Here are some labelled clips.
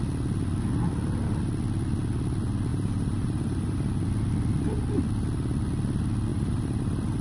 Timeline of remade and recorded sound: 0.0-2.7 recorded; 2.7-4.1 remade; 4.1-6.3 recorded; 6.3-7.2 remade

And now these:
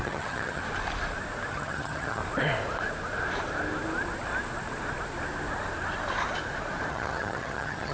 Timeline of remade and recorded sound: 0.0-0.6 remade; 0.6-1.5 recorded; 1.5-2.2 remade; 2.2-6.9 recorded; 6.9-7.9 remade

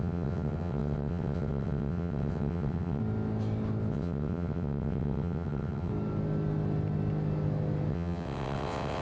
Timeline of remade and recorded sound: 0.0-3.0 remade; 3.0-3.9 recorded; 3.9-5.9 remade; 5.9-7.9 recorded; 7.9-9.0 remade

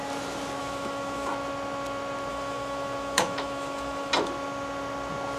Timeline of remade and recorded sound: 0.0-0.6 recorded; 0.6-1.3 remade; 1.3-2.3 recorded; 2.3-4.1 remade; 4.1-5.4 recorded

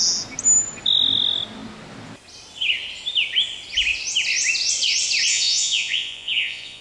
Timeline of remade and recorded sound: 0.0-5.3 recorded; 5.3-6.8 remade

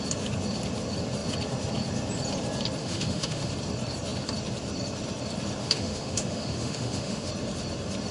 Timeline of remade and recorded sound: 0.0-2.8 recorded; 2.8-3.5 remade; 3.5-5.6 recorded; 5.6-7.3 remade; 7.3-8.1 recorded

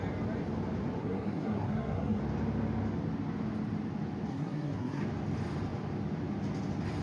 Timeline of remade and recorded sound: 0.0-1.0 recorded; 1.0-2.2 remade; 2.2-4.3 recorded; 4.3-5.0 remade; 5.0-7.0 recorded

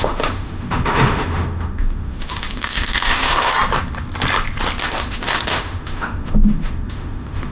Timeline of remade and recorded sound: 0.0-3.5 remade; 3.5-4.8 recorded; 4.8-7.5 remade